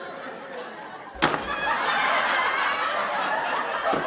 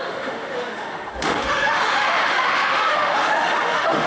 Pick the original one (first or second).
first